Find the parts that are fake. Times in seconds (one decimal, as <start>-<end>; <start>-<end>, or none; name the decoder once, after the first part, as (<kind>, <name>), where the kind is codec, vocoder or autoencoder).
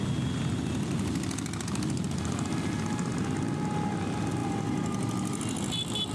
none